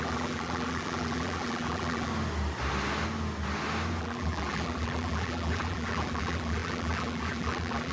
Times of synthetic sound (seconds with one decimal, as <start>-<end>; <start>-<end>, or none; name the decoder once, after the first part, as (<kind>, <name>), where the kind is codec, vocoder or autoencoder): 0.0-2.1 (vocoder, BigVGAN v2); 4.0-7.9